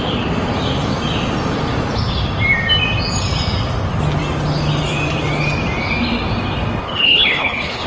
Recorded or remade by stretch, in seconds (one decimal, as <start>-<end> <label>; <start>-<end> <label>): 0.0-6.9 recorded; 6.9-7.9 remade